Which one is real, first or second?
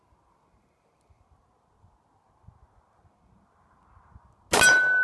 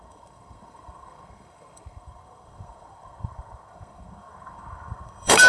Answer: first